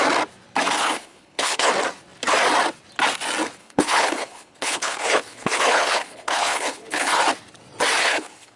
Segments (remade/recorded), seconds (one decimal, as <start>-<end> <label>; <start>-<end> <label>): 0.0-0.8 recorded; 0.8-1.7 remade; 1.7-3.6 recorded; 3.6-7.2 remade; 7.2-8.0 recorded; 8.0-8.6 remade